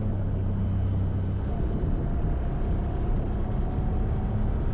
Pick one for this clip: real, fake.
real